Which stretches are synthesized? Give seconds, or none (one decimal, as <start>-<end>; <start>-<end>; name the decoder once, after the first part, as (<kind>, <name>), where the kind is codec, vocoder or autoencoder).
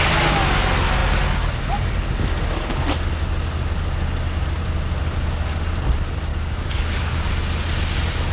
6.3-7.3 (codec, DAC)